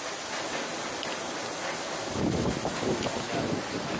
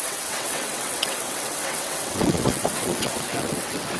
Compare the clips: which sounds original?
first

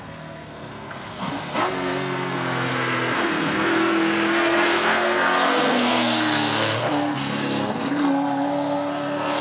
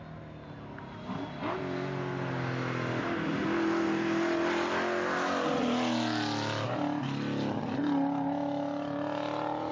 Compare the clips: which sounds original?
second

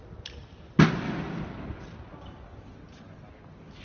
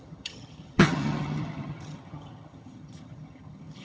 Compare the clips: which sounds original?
first